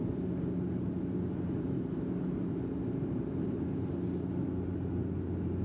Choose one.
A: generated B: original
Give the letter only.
B